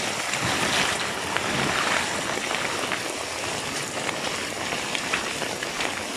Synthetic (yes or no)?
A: no